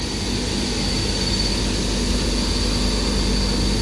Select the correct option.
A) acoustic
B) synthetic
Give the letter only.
A